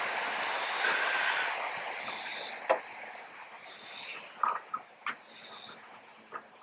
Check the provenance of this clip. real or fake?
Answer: real